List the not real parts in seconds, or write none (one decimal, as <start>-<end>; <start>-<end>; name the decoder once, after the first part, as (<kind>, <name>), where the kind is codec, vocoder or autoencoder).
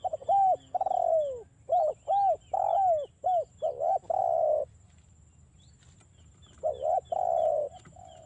none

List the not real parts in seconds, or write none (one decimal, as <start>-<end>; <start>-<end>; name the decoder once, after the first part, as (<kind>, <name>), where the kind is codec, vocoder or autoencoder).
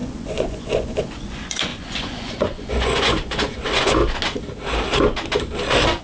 0.0-4.0 (vocoder, Vocos)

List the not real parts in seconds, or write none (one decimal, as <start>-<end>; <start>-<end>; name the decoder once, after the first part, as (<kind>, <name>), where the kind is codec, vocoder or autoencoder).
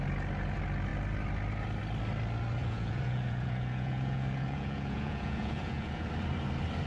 2.6-6.1 (vocoder, Vocos)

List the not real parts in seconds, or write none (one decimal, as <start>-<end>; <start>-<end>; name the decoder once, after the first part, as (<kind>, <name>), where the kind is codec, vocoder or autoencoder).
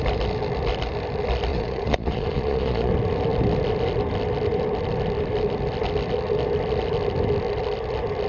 1.5-2.9 (vocoder, Vocos)